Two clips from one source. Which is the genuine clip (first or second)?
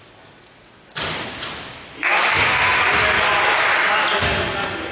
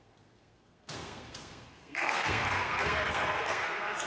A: first